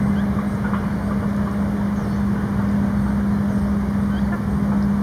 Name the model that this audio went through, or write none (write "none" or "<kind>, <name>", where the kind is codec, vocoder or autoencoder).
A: none